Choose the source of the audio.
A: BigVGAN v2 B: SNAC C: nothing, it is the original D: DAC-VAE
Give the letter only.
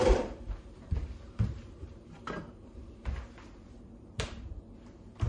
A